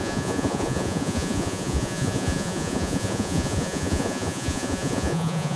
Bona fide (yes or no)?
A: no